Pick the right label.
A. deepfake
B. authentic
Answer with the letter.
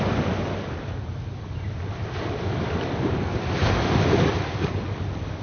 B